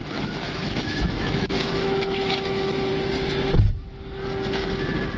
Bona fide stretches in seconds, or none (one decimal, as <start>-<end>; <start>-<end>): 2.9-5.2